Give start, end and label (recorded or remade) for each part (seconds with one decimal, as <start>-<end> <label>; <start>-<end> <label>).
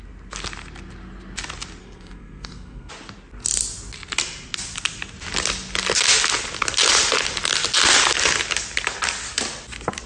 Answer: 0.0-1.8 recorded; 1.8-2.9 remade; 2.9-10.1 recorded